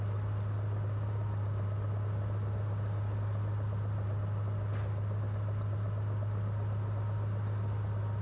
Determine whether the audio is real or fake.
real